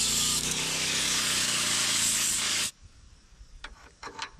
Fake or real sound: fake